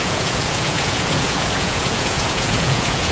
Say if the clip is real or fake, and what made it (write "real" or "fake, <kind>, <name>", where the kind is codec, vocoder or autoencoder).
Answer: fake, vocoder, Vocos